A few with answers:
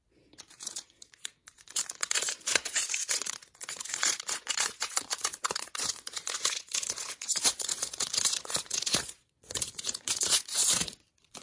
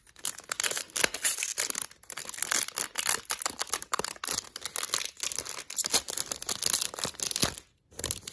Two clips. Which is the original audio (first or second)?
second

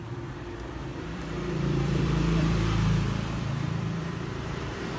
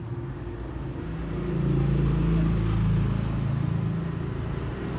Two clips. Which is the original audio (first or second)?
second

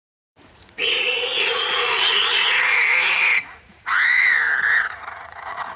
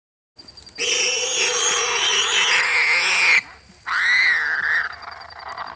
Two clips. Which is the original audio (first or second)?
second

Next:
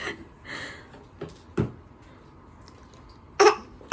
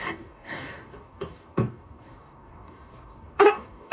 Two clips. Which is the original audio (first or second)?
first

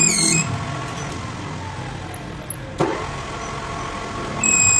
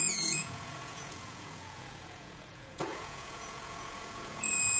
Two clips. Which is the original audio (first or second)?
first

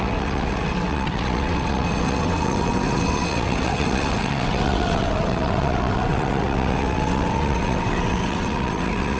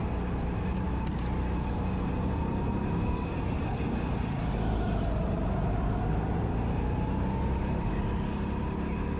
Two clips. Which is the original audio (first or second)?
second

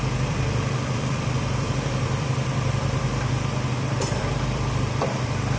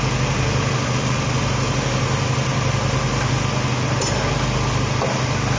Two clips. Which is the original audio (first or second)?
second